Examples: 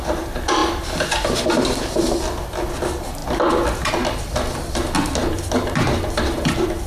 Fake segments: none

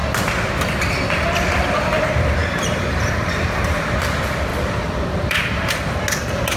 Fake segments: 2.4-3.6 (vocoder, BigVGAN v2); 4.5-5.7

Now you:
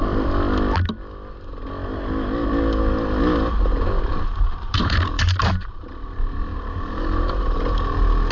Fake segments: 4.1-7.6 (vocoder, BigVGAN v2)

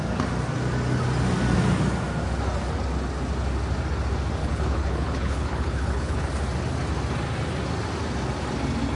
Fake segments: 4.4-6.3 (codec, HILCodec)

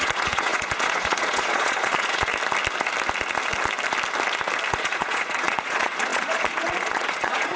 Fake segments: 0.0-2.3 (vocoder, Vocos); 4.7-7.6

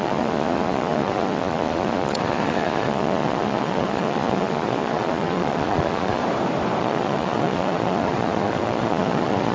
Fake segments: 0.0-6.2 (vocoder, Vocos); 6.8-9.5

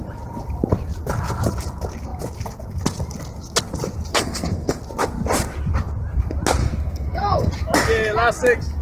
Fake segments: 4.1-4.8 (codec, SNAC); 6.6-7.5